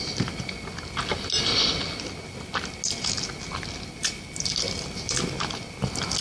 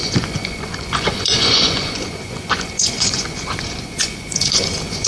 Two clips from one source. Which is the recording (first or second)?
first